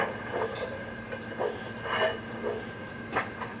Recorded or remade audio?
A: recorded